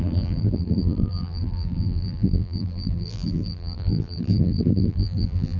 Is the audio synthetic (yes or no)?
yes